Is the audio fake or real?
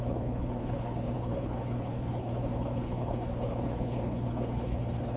fake